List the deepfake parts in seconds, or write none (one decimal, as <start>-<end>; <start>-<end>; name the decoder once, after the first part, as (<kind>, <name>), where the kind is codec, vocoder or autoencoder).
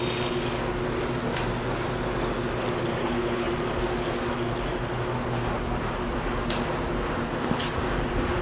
3.0-3.5 (codec, HILCodec)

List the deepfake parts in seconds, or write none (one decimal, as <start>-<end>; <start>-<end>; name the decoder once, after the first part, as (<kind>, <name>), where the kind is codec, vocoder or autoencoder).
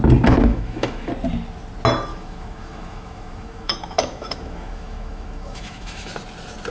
0.5-1.1 (autoencoder, DAC-VAE); 2.1-6.1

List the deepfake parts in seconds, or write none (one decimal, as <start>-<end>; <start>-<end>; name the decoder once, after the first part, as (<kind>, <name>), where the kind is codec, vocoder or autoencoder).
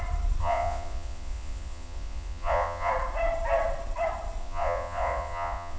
0.4-2.9 (vocoder, Vocos); 4.4-5.8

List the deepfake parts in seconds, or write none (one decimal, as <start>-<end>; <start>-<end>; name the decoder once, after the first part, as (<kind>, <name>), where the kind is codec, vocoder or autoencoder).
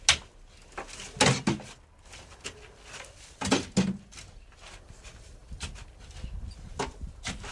none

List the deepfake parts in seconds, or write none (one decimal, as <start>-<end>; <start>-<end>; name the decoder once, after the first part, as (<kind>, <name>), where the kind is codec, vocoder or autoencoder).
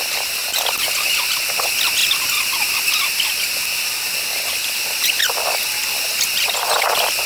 none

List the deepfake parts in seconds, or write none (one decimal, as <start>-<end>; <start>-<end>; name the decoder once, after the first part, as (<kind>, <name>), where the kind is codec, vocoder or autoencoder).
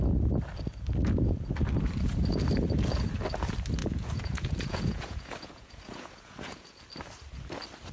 3.8-6.8 (vocoder, Vocos)